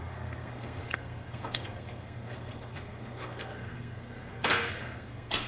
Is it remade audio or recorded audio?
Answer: remade